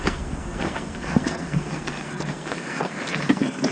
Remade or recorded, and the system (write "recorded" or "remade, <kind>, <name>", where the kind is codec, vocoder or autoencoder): remade, codec, SNAC